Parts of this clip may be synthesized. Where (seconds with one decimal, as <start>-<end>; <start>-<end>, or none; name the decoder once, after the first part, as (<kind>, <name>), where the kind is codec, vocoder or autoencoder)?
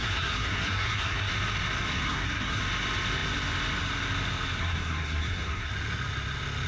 0.0-1.3 (codec, SNAC); 1.9-2.6; 4.6-5.7